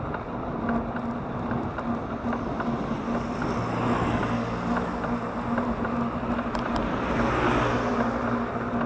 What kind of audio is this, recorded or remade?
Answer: recorded